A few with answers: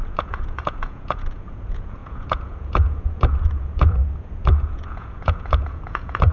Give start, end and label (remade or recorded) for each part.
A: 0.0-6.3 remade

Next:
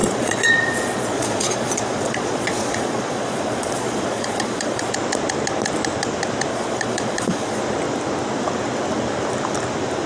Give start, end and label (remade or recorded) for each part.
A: 0.0-4.9 remade; 4.9-6.5 recorded; 6.5-7.6 remade; 7.6-10.1 recorded

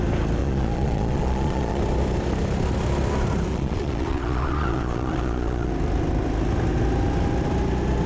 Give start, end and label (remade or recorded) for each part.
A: 0.0-0.4 recorded; 0.4-1.8 remade; 1.8-3.5 recorded; 3.5-5.7 remade; 5.7-8.1 recorded

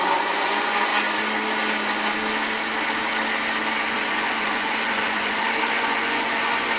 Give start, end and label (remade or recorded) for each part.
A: 0.0-0.9 remade; 0.9-3.9 recorded; 3.9-6.8 remade

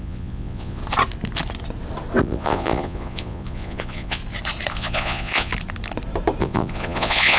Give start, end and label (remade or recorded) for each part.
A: 0.0-0.8 remade; 0.8-2.2 recorded; 2.2-4.2 remade; 4.2-4.7 recorded; 4.7-5.5 remade; 5.5-6.4 recorded; 6.4-7.4 remade

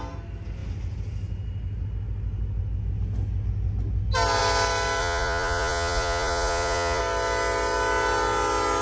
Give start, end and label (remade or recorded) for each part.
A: 0.0-5.0 recorded; 5.0-7.0 remade; 7.0-8.8 recorded